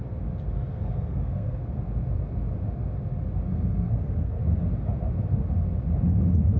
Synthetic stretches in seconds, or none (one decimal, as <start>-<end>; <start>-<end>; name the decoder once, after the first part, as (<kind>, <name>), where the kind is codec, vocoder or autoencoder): 0.7-1.6 (codec, SNAC); 3.5-4.4